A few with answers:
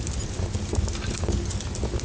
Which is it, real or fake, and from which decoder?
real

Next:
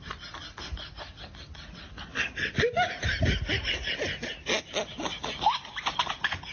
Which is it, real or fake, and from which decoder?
real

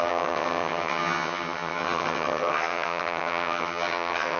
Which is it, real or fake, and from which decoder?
fake, vocoder, HiFi-GAN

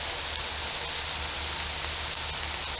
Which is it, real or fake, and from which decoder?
real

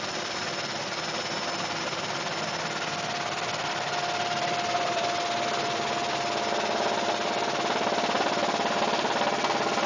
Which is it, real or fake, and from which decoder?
real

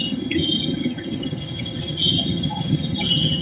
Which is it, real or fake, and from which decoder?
fake, vocoder, HiFi-GAN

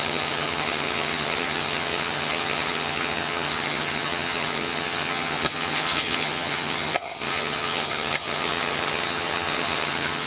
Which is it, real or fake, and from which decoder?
fake, vocoder, HiFi-GAN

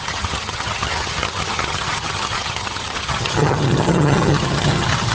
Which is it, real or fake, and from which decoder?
fake, vocoder, HiFi-GAN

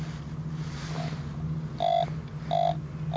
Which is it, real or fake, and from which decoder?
real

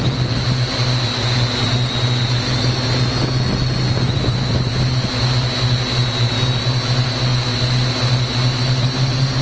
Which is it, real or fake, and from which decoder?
real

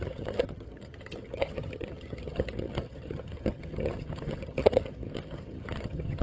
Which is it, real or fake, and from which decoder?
fake, vocoder, HiFi-GAN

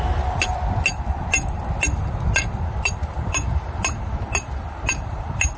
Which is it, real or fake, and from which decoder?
real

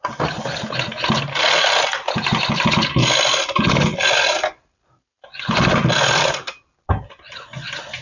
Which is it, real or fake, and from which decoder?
real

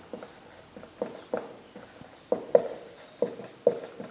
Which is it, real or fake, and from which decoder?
real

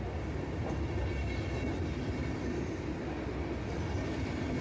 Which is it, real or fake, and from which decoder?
real